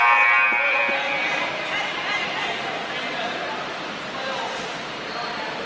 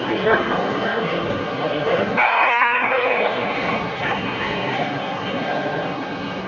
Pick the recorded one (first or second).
first